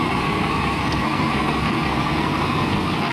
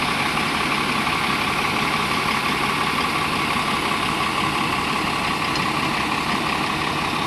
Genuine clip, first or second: second